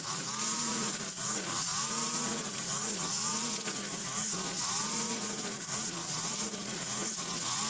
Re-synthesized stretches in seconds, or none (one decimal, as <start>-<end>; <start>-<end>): 0.0-7.7